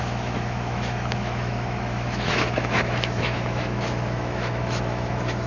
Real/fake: fake